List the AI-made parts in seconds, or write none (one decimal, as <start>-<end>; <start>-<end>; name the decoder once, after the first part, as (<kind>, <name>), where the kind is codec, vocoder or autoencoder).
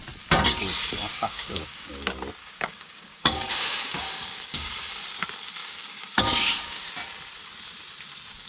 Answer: 1.1-1.9 (codec, DAC); 2.4-5.0; 5.6-6.9